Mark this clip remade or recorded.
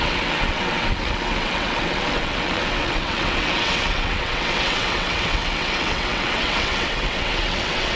remade